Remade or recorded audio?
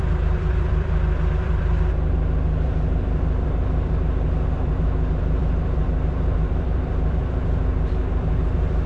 remade